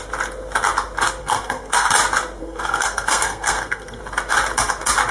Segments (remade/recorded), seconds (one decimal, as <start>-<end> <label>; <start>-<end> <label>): 0.0-1.2 recorded; 1.2-1.9 remade; 1.9-2.4 recorded; 2.4-4.0 remade; 4.0-5.1 recorded